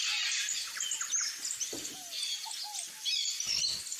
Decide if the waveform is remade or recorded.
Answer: recorded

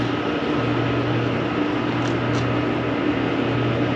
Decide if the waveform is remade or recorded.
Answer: recorded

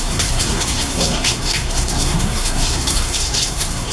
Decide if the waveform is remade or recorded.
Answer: remade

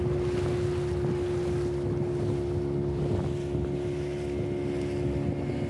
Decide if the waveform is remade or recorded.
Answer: recorded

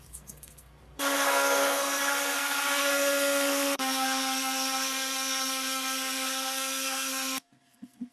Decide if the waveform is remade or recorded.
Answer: remade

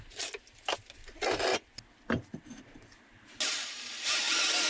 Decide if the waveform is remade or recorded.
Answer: recorded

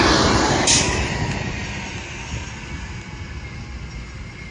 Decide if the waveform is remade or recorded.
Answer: recorded